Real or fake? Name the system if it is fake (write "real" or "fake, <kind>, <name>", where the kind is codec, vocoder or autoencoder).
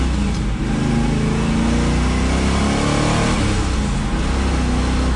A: real